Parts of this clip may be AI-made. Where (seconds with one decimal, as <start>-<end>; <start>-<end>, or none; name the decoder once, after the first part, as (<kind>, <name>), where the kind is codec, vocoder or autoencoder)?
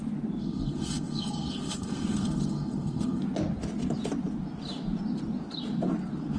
0.4-3.2 (codec, SNAC)